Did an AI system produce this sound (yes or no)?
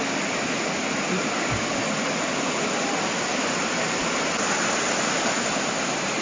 no